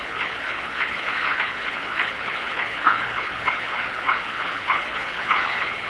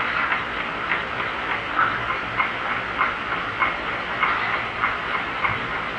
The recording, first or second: second